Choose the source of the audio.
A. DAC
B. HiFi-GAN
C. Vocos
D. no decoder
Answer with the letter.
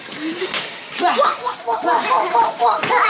D